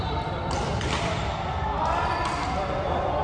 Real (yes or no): yes